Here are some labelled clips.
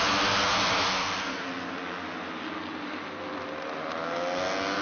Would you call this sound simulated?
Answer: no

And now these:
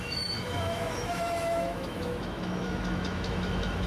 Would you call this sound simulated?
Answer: yes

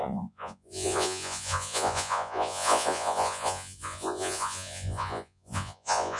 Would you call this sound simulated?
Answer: yes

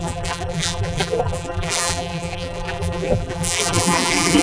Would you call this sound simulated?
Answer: yes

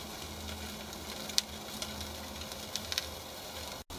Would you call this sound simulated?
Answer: no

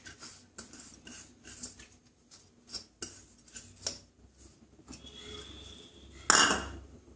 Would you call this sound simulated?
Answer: no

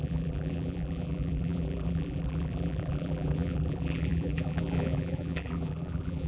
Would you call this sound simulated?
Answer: yes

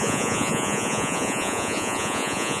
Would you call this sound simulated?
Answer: yes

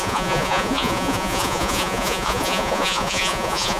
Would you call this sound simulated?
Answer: yes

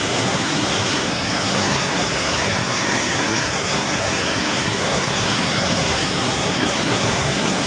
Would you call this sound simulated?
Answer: yes